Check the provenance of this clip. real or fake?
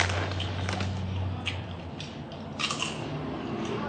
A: real